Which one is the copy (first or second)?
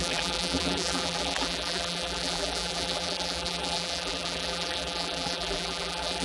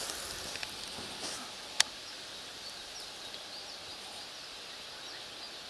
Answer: first